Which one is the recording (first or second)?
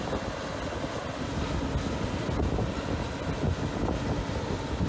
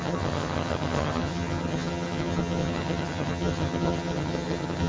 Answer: first